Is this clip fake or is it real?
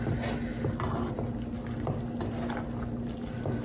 real